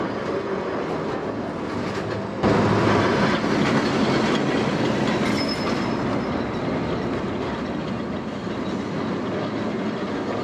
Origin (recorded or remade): recorded